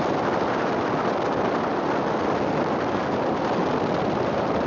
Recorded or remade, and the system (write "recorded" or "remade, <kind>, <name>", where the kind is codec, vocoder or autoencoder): recorded